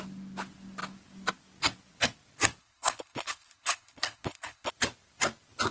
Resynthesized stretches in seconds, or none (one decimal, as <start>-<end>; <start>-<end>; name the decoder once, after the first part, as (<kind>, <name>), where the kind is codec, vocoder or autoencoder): 2.6-4.7 (codec, HILCodec)